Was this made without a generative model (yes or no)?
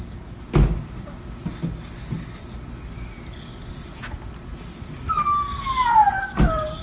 yes